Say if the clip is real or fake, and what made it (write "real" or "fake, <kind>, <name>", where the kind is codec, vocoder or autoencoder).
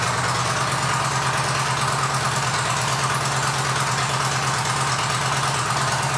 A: real